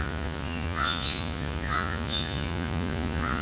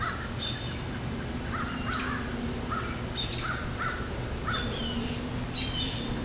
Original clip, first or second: second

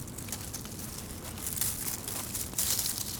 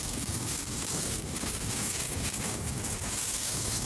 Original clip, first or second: first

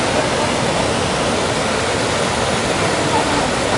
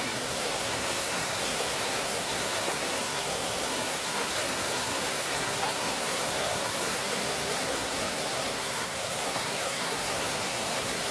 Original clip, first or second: first